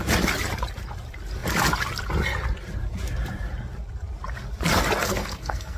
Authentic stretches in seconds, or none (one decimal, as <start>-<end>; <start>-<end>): 0.0-5.0